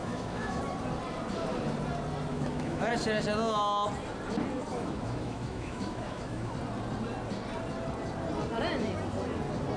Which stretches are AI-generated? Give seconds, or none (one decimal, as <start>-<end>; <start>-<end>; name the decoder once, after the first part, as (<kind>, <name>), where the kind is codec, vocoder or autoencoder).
0.0-0.6 (autoencoder, DAC-VAE); 2.3-2.9; 4.7-6.5